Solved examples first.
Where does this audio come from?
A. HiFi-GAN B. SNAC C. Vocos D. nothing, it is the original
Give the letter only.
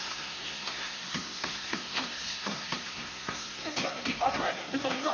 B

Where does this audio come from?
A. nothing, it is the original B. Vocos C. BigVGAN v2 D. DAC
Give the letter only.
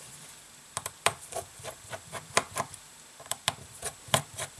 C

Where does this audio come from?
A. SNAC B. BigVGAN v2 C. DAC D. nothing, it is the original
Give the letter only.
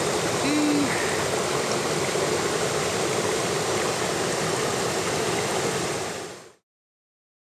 D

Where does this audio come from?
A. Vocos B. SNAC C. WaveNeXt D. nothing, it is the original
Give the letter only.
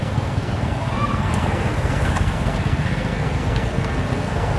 B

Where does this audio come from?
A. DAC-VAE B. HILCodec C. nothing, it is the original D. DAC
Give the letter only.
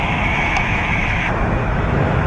A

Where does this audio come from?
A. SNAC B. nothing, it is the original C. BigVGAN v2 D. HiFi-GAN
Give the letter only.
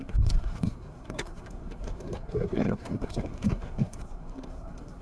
A